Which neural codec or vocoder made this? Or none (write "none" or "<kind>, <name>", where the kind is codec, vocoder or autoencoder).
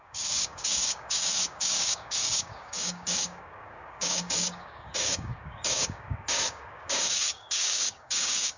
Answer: codec, DAC